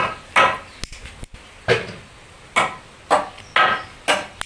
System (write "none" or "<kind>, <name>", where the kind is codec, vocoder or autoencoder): none